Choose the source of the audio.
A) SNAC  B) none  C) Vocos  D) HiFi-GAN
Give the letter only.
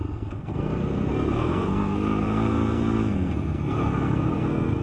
A